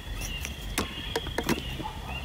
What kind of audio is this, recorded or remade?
recorded